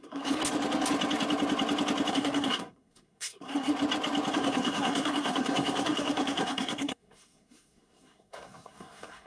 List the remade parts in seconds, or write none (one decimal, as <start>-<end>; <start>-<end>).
0.0-0.4; 2.1-3.7; 4.3-9.3